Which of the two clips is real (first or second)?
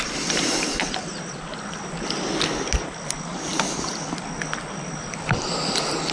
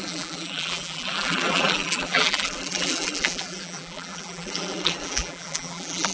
first